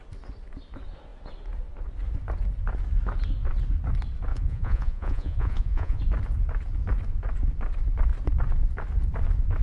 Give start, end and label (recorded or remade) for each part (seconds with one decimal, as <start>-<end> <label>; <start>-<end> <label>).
0.0-4.3 recorded; 4.3-6.0 remade; 6.0-9.6 recorded